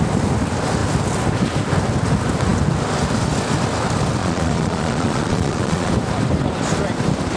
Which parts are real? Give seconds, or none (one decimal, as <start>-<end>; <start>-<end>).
0.0-4.2; 5.9-7.4

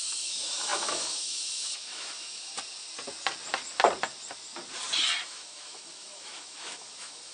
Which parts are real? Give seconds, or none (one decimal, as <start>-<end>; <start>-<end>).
2.5-5.2